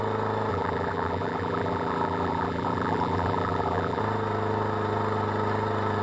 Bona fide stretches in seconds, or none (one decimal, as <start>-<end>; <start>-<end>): 0.0-0.5; 4.0-6.0